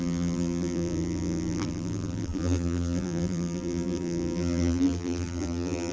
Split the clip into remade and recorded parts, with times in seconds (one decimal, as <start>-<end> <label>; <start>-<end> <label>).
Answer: 0.0-5.9 remade